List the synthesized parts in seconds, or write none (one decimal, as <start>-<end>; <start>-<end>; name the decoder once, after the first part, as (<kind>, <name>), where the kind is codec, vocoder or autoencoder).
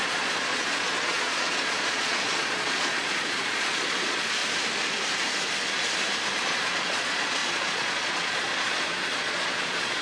0.0-4.4 (vocoder, Vocos); 6.4-10.0